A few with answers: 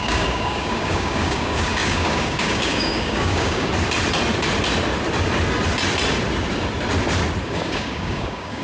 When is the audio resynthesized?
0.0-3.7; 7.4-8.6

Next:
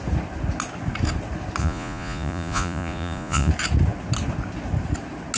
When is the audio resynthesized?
1.6-3.5

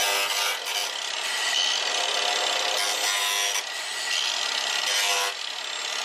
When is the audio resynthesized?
none

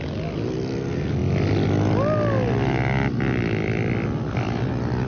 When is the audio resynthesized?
none